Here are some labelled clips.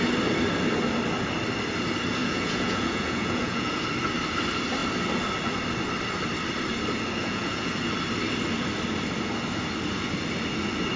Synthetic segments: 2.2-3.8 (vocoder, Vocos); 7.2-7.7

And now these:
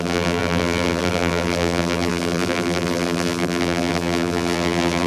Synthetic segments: 0.0-5.1 (vocoder, BigVGAN v2)